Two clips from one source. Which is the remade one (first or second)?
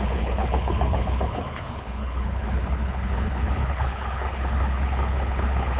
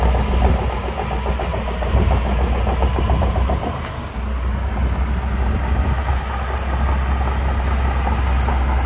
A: first